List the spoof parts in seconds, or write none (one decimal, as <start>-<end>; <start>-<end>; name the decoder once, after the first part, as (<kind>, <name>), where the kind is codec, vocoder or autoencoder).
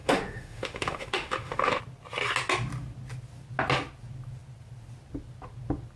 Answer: 0.0-1.8 (autoencoder, DAC-VAE)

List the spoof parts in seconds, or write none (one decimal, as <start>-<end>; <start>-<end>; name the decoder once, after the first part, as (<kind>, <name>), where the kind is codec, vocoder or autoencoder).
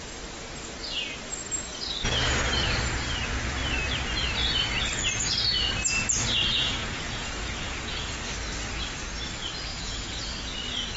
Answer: 6.8-8.2 (vocoder, Vocos); 9.7-10.3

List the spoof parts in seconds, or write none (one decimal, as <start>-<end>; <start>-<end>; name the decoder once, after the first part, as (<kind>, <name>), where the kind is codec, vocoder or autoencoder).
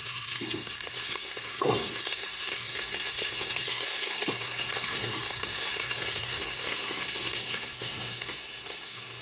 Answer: 0.0-9.2 (codec, SNAC)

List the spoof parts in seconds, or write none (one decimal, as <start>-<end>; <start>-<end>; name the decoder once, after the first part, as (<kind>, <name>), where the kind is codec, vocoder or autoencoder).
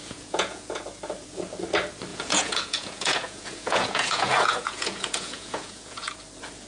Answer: 0.0-0.8 (vocoder, Vocos); 2.1-6.1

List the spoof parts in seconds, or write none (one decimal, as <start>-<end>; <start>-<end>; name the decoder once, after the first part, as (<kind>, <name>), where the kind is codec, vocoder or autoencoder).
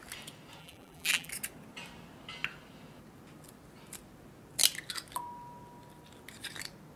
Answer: 0.6-1.3 (vocoder, BigVGAN v2)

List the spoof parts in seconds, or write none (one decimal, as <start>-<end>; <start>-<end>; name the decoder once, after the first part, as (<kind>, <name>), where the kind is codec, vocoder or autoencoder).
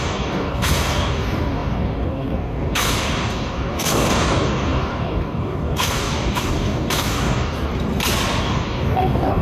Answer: 0.0-7.7 (codec, DAC); 8.4-9.4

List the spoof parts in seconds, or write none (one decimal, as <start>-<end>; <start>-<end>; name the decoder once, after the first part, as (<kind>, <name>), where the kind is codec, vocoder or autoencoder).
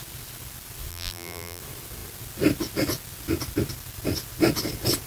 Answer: 0.9-1.6 (vocoder, BigVGAN v2)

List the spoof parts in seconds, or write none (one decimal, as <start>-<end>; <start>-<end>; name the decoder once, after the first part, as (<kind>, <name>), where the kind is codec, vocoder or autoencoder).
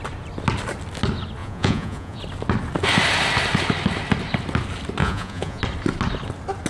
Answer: 1.4-2.2 (vocoder, Vocos); 5.0-5.6